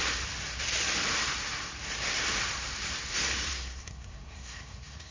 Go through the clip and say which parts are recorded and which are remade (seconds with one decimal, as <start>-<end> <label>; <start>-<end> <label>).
0.0-3.5 recorded; 3.5-5.1 remade